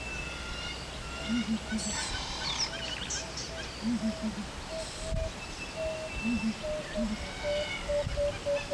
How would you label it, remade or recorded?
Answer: recorded